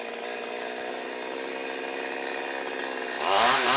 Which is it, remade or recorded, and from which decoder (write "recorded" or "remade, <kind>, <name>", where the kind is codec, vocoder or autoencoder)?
recorded